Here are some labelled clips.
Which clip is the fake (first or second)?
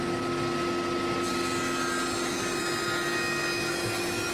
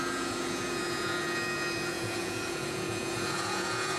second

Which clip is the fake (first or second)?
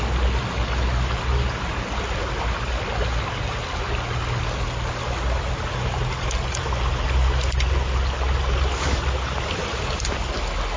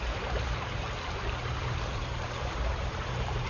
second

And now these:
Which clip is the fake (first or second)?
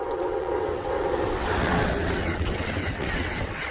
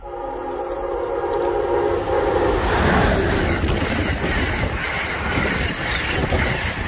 first